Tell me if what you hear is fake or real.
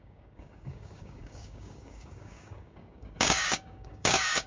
fake